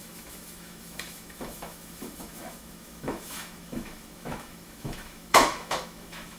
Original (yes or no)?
no